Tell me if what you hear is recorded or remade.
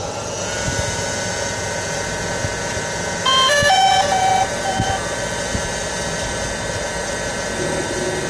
remade